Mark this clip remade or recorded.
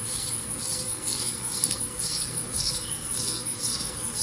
remade